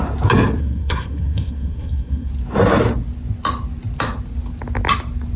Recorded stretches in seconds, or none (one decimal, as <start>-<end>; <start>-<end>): 0.0-0.6; 2.3-5.4